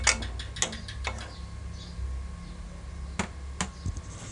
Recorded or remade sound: recorded